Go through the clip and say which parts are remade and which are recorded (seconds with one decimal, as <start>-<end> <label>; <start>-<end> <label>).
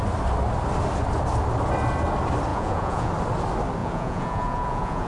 0.0-2.5 recorded; 2.5-3.1 remade; 3.1-3.8 recorded; 3.8-5.1 remade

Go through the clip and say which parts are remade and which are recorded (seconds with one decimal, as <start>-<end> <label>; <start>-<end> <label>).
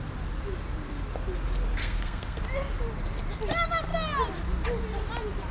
0.0-1.8 recorded; 1.8-2.4 remade; 2.4-5.5 recorded